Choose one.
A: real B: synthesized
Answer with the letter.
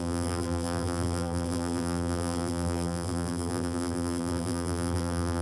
B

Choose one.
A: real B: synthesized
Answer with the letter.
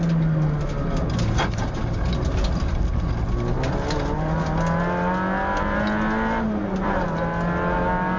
A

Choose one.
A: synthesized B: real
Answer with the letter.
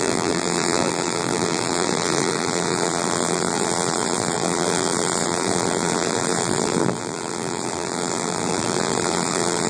A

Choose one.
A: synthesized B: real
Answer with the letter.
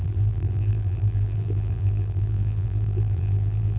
A